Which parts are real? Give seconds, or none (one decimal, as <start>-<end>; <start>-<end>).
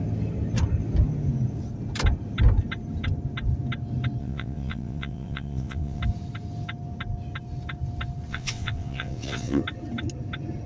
0.0-4.2; 6.0-8.3; 9.6-10.7